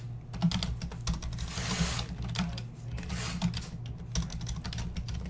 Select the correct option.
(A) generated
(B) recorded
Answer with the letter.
B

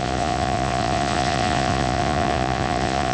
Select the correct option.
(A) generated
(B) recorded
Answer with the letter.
A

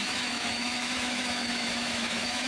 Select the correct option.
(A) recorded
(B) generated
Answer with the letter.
B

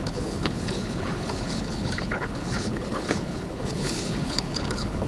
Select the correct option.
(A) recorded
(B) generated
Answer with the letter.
B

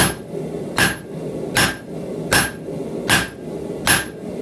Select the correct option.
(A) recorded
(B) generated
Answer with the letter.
A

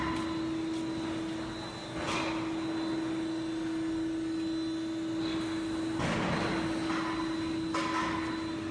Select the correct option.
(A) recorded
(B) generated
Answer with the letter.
A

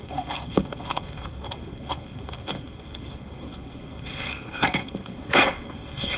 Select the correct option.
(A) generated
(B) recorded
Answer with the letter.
A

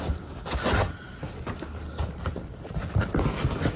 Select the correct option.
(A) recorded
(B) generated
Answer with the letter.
A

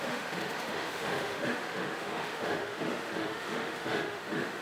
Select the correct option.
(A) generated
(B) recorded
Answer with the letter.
A